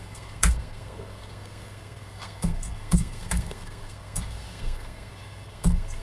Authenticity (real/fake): fake